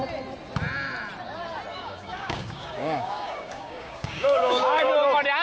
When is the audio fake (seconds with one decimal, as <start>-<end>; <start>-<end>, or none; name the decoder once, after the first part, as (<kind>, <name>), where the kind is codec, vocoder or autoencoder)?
1.7-4.9 (codec, DAC)